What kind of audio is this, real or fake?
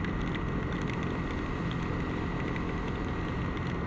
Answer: real